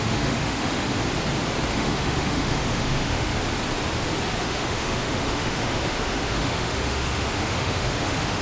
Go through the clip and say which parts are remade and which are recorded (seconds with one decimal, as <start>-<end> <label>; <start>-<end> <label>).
0.0-0.9 remade; 0.9-1.7 recorded; 1.7-3.3 remade; 3.3-4.4 recorded; 4.4-8.4 remade